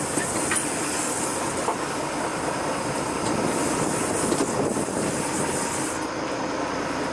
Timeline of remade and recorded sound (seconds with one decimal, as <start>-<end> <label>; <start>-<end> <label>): 0.0-2.3 recorded; 2.3-4.2 remade; 4.2-7.1 recorded